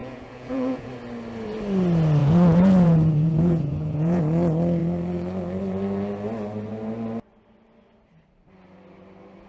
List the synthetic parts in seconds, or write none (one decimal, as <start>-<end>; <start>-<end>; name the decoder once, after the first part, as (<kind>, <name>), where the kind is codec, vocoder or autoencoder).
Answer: 0.0-0.9 (vocoder, Vocos); 2.2-4.2